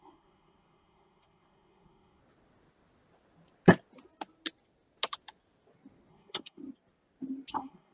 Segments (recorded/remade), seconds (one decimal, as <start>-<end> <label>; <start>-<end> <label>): 0.0-2.2 remade; 2.2-6.1 recorded; 6.1-6.6 remade; 6.6-7.5 recorded; 7.5-7.9 remade